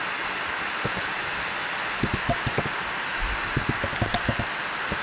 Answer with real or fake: real